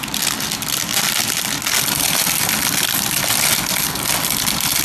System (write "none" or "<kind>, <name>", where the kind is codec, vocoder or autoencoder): none